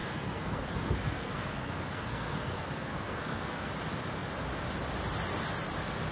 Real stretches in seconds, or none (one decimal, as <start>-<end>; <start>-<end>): 3.7-6.1